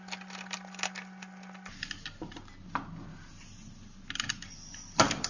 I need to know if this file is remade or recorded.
recorded